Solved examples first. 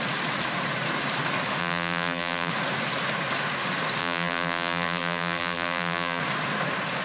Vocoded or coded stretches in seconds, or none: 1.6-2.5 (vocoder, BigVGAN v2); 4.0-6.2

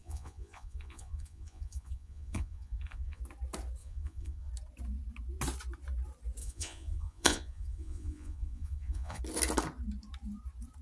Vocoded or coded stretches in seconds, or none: 0.0-3.2 (vocoder, Vocos); 3.8-4.5; 6.4-9.2

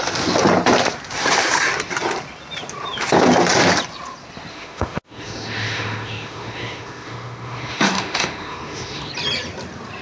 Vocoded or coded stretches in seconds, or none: 4.5-9.1 (autoencoder, DAC-VAE)

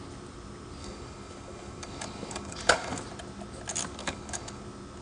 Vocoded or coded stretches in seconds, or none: 0.8-3.0 (codec, DAC); 4.0-4.6